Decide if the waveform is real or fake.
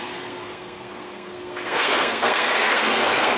fake